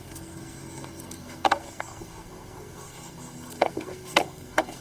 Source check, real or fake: fake